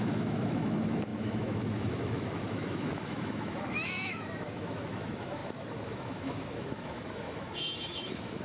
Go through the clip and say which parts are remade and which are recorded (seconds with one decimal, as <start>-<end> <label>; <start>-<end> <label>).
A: 0.0-8.4 remade